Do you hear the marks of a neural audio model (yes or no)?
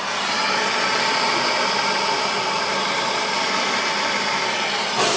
no